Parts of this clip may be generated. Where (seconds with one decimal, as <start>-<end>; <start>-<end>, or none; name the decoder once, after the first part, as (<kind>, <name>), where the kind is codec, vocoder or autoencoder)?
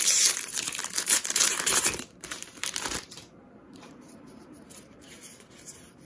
0.0-6.0 (vocoder, BigVGAN v2)